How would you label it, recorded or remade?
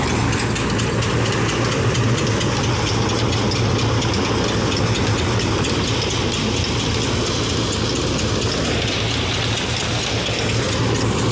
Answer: recorded